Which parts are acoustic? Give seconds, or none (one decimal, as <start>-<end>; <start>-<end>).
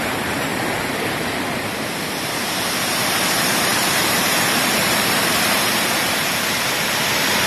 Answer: 0.5-2.8